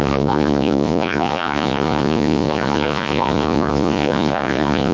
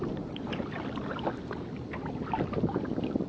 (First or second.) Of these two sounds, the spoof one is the first